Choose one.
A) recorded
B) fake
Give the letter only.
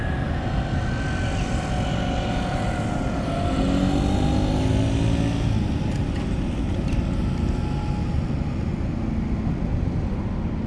A